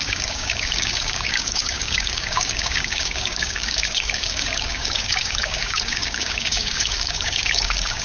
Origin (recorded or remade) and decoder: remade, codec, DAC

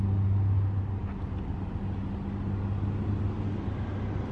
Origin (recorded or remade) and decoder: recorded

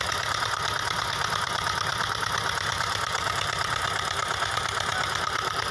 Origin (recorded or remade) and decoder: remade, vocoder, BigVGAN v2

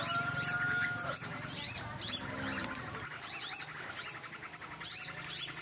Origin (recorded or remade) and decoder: recorded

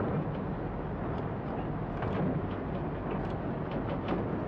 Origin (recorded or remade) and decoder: recorded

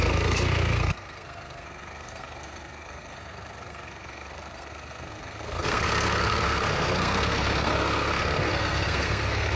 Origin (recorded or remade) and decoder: remade, codec, SNAC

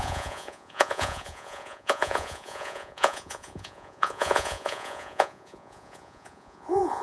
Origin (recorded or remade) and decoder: remade, vocoder, Vocos